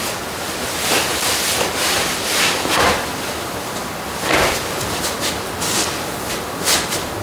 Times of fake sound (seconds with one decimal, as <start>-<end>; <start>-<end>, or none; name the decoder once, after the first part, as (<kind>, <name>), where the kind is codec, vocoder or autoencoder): none